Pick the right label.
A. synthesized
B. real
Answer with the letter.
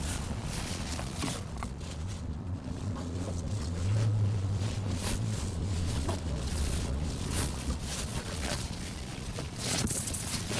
A